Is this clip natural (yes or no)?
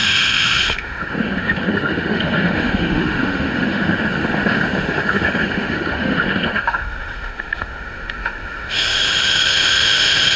no